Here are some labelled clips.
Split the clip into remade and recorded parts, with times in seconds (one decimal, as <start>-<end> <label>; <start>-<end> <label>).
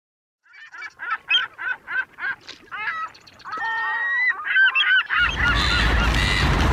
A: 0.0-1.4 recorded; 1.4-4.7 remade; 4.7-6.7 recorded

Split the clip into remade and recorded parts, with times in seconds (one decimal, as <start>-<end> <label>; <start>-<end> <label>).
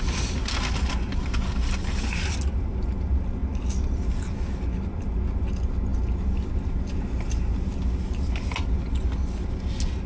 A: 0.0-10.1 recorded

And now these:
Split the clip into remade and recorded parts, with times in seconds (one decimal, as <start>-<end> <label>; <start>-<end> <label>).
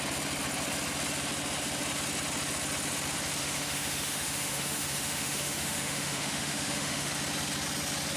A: 0.0-3.4 recorded; 3.4-7.1 remade; 7.1-8.2 recorded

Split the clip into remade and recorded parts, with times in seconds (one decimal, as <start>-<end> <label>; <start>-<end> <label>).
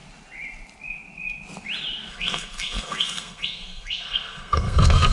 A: 0.0-2.1 recorded; 2.1-5.1 remade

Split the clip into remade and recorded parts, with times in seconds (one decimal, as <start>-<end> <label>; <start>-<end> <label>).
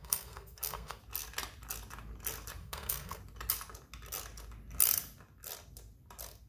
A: 0.0-1.0 remade; 1.0-2.6 recorded; 2.6-3.2 remade; 3.2-6.5 recorded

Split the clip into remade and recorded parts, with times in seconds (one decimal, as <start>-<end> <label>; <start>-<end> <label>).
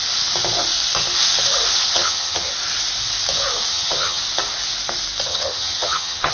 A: 0.0-1.7 recorded; 1.7-2.5 remade; 2.5-3.7 recorded; 3.7-4.2 remade; 4.2-5.3 recorded; 5.3-6.3 remade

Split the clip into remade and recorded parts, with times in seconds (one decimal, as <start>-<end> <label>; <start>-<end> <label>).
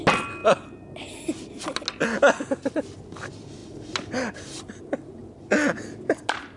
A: 0.0-6.6 recorded